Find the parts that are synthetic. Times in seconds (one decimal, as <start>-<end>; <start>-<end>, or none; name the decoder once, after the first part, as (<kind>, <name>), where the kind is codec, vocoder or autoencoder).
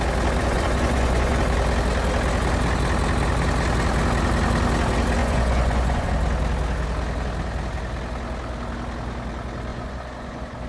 0.4-1.4 (vocoder, Vocos); 5.2-6.1; 9.7-10.7